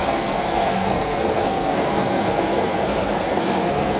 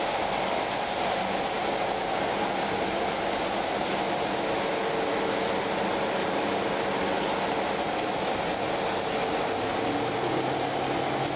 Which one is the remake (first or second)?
first